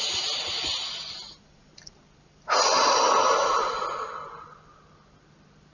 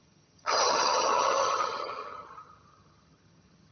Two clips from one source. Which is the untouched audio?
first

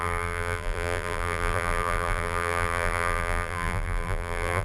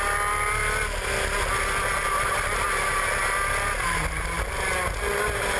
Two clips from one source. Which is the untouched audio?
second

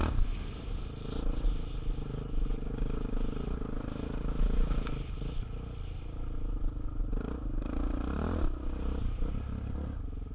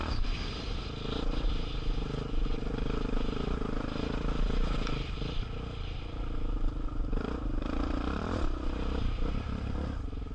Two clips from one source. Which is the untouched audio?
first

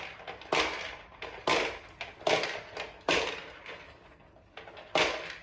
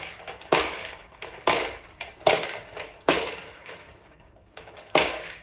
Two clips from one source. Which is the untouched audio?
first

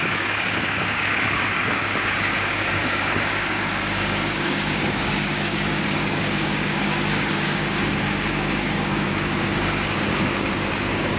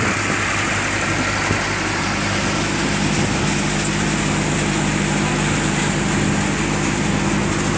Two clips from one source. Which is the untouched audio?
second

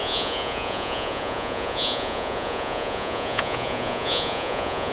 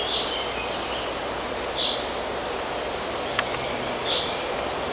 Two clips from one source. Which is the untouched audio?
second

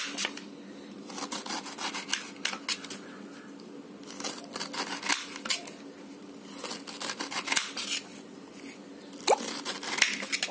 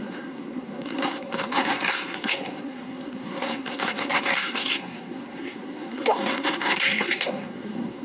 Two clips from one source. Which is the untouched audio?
first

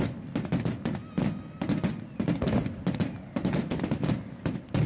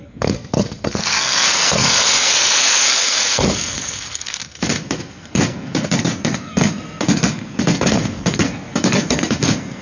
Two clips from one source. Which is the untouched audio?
first